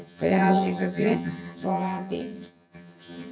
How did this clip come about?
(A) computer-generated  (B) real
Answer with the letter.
A